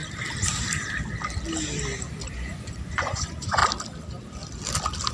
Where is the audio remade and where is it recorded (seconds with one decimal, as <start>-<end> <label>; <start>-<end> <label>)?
0.0-2.3 recorded; 2.3-3.6 remade; 3.6-5.1 recorded